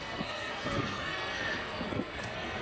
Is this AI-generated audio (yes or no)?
yes